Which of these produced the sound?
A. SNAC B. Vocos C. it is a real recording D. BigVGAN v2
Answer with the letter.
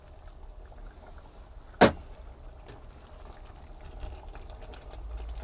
C